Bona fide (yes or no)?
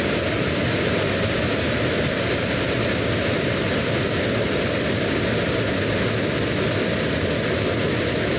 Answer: yes